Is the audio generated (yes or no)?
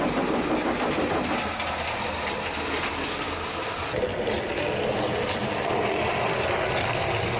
no